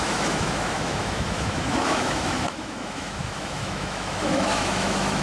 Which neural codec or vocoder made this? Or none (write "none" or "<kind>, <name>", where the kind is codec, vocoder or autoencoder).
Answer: autoencoder, DAC-VAE